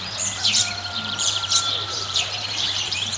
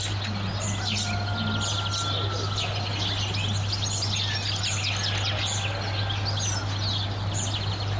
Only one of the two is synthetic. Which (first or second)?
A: first